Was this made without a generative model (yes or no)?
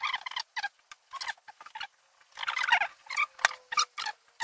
yes